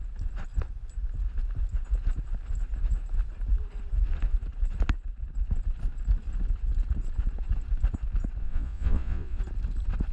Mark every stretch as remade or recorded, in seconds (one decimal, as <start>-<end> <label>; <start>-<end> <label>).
0.0-8.4 recorded; 8.4-9.4 remade; 9.4-10.1 recorded